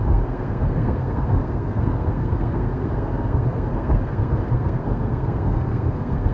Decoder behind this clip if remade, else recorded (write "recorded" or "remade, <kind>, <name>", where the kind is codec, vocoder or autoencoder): remade, codec, SNAC